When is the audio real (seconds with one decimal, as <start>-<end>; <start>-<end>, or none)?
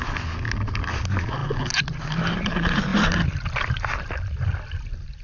0.0-5.2